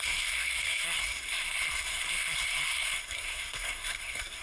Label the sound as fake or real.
fake